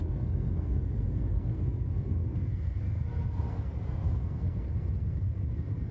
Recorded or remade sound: remade